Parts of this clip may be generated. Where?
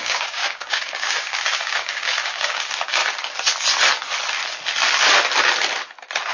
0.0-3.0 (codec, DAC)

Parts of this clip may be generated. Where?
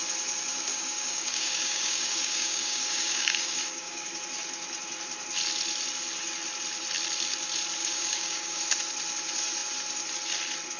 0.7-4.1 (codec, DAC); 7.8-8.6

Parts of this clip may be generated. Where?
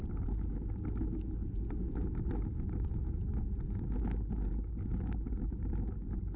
none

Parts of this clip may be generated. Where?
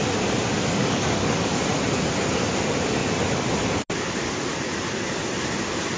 0.8-1.6 (codec, DAC)